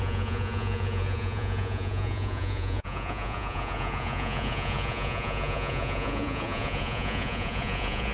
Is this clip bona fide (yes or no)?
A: no